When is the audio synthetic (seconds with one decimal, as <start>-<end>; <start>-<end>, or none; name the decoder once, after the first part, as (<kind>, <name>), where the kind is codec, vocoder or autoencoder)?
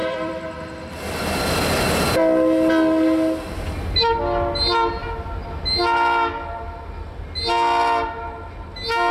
0.0-0.6 (vocoder, BigVGAN v2)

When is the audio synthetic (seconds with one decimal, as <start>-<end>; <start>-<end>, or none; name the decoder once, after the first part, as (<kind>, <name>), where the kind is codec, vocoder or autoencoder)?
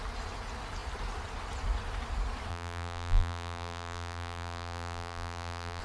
2.5-5.8 (vocoder, BigVGAN v2)